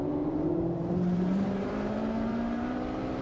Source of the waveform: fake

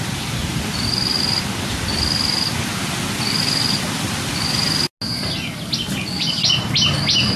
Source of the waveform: real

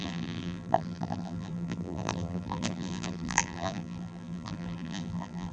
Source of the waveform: fake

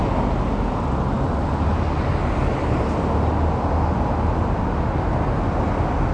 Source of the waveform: real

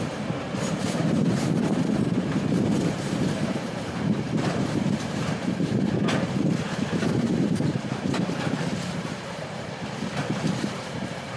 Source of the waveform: fake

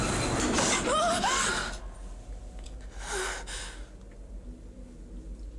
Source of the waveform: real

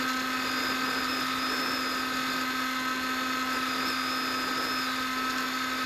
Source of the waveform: real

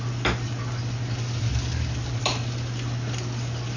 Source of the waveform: real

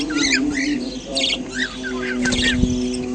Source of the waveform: real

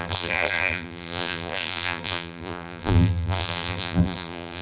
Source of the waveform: fake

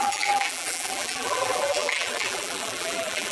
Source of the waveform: fake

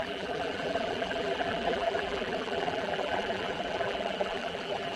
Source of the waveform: fake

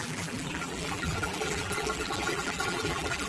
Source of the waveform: fake